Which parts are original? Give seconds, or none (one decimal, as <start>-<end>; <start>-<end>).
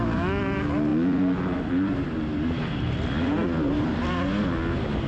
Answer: 0.0-0.9; 4.0-5.1